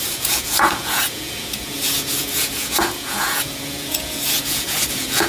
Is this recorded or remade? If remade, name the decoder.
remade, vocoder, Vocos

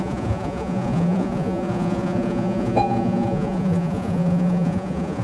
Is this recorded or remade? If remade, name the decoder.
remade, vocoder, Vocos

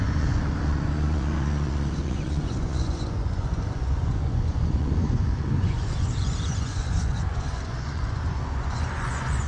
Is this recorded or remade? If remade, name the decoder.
remade, vocoder, Vocos